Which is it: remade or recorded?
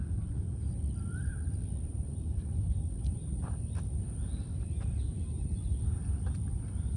remade